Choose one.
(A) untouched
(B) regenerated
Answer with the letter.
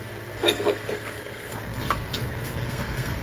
B